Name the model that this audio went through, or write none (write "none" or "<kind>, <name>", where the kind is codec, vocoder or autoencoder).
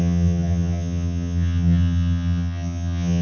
vocoder, HiFi-GAN